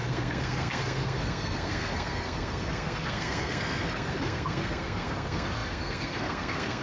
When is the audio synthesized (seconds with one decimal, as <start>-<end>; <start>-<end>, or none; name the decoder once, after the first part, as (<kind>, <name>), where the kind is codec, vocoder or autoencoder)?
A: 0.0-6.8 (codec, SNAC)